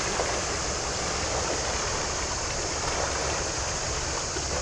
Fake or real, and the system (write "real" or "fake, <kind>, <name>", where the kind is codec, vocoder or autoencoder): real